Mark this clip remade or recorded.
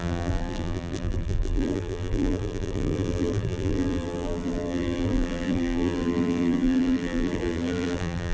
remade